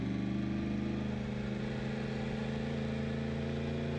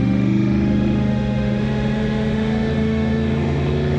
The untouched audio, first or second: first